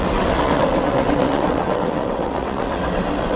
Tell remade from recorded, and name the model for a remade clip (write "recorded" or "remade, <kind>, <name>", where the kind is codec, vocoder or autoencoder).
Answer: remade, vocoder, WaveNeXt